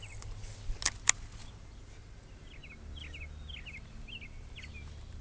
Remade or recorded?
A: recorded